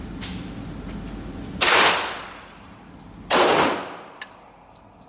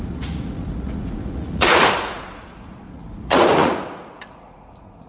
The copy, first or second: second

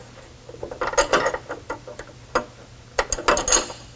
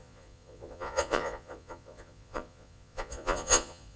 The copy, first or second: second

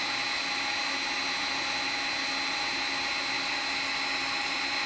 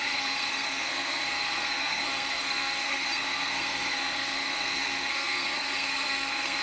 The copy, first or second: second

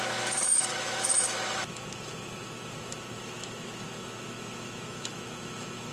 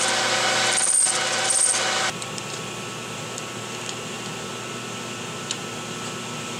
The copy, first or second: first